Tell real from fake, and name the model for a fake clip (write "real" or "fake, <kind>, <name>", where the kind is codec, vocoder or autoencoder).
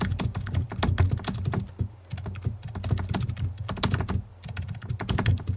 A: real